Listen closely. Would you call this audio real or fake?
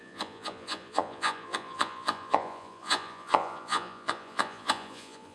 fake